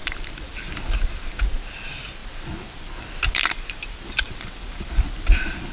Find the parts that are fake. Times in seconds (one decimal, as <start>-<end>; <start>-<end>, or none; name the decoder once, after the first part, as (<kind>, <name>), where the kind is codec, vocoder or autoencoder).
0.0-0.7 (vocoder, BigVGAN v2); 2.2-5.7